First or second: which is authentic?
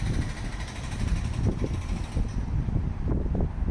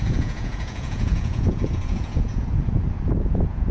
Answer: first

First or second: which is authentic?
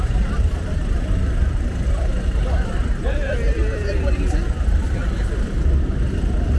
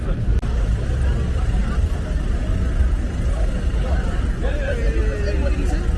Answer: second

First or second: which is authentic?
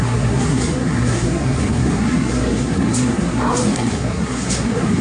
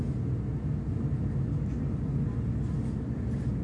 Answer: second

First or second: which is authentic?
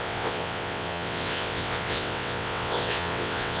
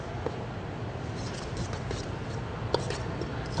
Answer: second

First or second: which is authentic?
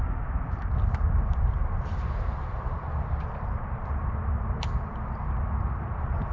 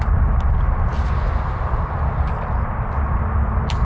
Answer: second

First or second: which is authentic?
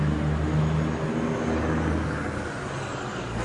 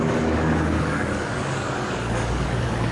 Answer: first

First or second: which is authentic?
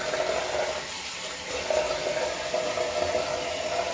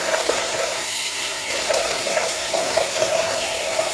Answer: first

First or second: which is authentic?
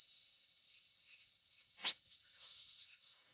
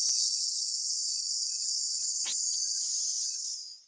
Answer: second